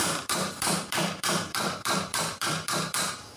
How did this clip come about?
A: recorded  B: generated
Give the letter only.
B